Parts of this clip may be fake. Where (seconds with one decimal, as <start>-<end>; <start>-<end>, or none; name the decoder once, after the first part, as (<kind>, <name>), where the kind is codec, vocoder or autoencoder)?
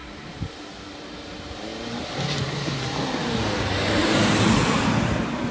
0.0-0.6 (vocoder, BigVGAN v2); 1.7-2.8; 3.2-5.5